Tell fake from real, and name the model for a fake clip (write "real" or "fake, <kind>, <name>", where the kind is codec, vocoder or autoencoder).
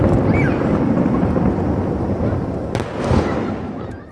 real